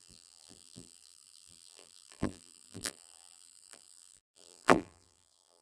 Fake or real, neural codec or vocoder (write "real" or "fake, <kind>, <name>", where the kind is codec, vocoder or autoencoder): fake, vocoder, BigVGAN v2